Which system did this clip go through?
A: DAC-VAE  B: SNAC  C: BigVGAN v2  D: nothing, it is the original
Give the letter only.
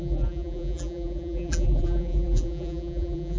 C